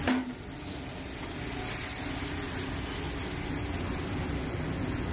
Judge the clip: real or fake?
real